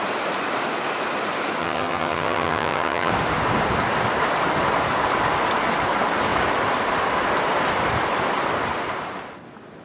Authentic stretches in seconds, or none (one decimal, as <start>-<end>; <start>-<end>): 0.0-1.6; 3.1-9.8